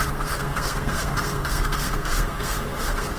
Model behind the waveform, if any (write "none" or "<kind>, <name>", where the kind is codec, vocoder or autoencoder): codec, SNAC